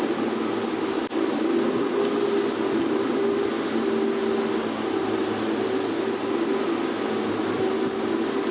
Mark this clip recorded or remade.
recorded